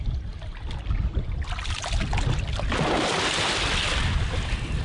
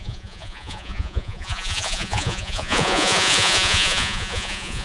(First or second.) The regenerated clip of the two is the second